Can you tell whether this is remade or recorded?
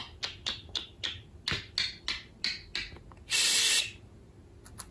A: recorded